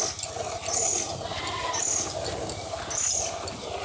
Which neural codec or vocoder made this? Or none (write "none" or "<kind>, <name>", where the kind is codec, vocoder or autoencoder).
none